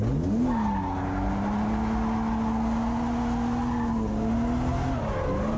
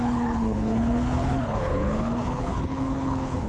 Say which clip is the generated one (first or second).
second